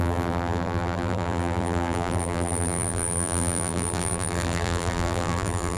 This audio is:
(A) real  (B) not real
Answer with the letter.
B